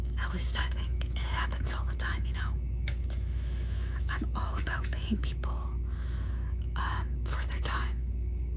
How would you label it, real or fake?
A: fake